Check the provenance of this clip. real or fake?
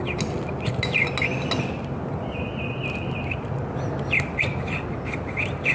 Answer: real